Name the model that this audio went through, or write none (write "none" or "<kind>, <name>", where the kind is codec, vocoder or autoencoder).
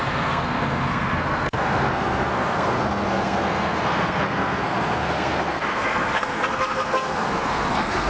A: codec, SNAC